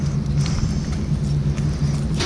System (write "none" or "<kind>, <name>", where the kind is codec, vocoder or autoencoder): none